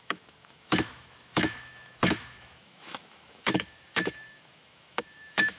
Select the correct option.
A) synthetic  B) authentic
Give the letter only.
A